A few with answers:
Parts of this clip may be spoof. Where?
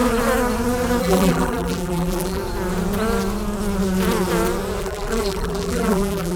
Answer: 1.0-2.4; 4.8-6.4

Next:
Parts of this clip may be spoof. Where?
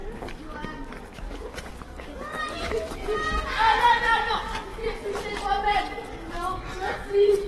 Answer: 0.0-3.2; 4.3-4.8; 5.8-7.5